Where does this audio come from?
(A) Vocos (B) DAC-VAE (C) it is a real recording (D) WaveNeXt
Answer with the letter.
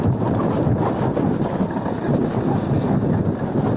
C